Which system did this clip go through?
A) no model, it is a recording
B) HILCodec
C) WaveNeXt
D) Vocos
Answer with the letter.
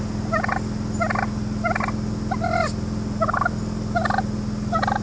A